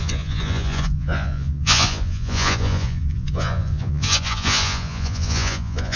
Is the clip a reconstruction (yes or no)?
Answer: yes